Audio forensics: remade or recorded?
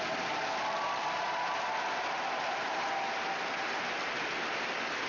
recorded